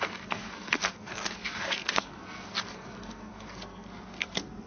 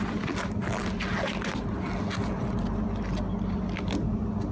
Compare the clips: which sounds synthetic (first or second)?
first